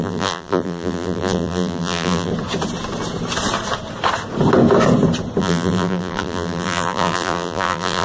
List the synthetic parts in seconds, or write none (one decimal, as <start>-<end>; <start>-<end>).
0.0-2.3; 5.4-8.0